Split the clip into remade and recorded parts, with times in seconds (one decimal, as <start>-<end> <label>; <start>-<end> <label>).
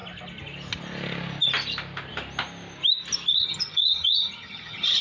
0.0-3.3 recorded; 3.3-5.0 remade